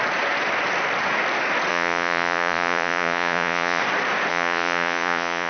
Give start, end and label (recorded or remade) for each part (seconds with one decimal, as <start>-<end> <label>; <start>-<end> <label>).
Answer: 0.0-1.7 recorded; 1.7-3.8 remade; 3.8-4.3 recorded; 4.3-5.5 remade